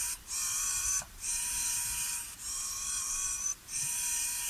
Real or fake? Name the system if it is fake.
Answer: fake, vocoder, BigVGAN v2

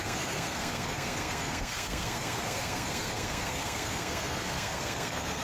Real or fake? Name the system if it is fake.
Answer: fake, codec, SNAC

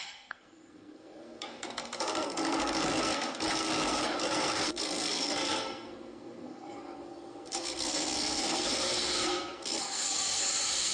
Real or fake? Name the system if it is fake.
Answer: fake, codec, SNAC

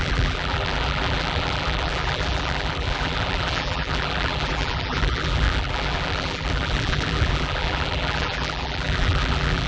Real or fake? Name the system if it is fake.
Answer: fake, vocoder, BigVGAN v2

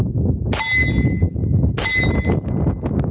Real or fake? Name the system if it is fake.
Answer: real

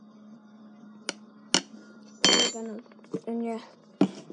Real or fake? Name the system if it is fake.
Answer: real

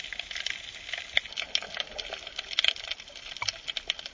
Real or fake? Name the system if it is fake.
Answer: real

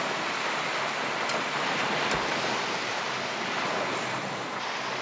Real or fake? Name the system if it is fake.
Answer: real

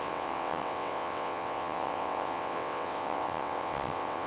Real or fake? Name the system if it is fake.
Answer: fake, vocoder, WaveNeXt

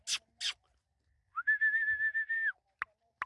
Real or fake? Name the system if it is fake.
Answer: real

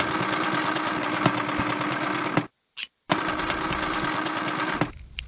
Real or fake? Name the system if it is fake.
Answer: real